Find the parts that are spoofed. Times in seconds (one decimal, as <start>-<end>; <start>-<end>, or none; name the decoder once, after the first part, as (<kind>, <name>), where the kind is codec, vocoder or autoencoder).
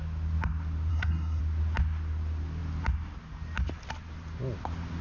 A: 0.9-1.4 (codec, SNAC)